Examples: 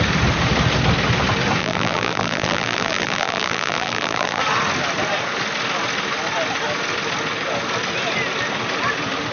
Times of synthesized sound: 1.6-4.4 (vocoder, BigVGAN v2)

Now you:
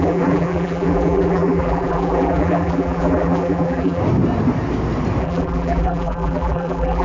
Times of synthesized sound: 0.0-4.0 (vocoder, BigVGAN v2); 5.2-7.0

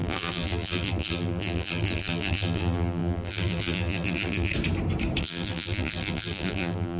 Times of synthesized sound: 0.0-4.5 (vocoder, BigVGAN v2); 5.2-7.0

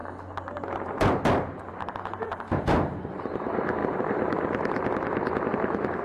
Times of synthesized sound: 1.9-6.0 (vocoder, BigVGAN v2)

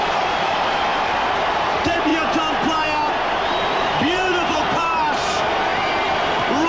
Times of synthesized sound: 0.0-0.9 (vocoder, BigVGAN v2); 1.5-2.1; 3.7-5.7; 6.3-6.7

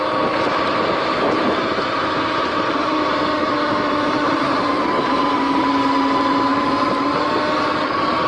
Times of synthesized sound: 1.0-5.6 (vocoder, BigVGAN v2); 6.5-7.3

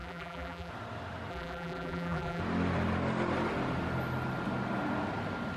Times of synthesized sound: 0.0-0.7 (vocoder, BigVGAN v2); 1.3-2.4